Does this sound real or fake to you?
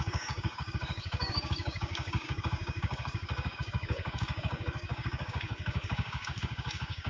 fake